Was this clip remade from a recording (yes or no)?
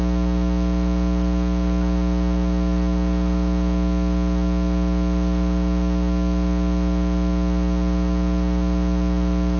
no